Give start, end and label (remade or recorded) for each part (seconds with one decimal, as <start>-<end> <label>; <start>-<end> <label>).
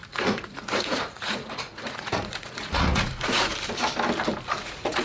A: 0.0-3.5 remade; 3.5-4.6 recorded; 4.6-5.0 remade